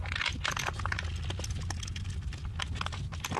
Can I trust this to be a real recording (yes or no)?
yes